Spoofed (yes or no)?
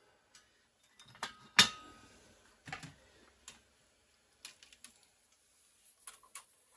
no